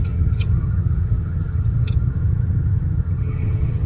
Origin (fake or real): fake